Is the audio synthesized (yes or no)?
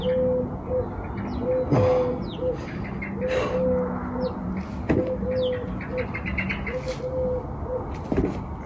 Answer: no